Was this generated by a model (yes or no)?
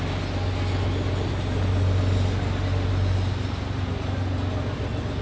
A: no